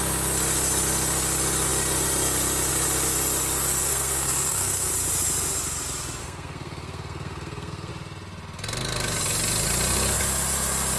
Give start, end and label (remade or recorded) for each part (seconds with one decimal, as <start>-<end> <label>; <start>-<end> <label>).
0.0-3.9 recorded; 3.9-4.9 remade; 4.9-6.2 recorded; 6.2-7.9 remade; 7.9-11.0 recorded